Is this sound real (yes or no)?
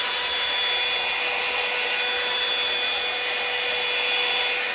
yes